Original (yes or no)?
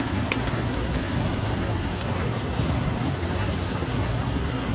no